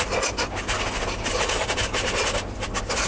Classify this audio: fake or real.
real